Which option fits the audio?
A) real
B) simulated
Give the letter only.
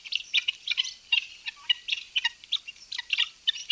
B